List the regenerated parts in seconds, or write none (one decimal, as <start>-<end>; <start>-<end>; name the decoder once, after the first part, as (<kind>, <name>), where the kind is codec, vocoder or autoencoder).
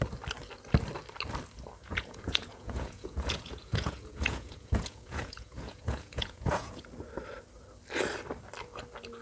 1.8-6.8 (vocoder, Vocos)